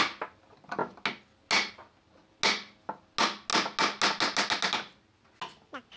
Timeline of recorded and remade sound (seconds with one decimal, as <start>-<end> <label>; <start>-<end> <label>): 0.0-6.0 recorded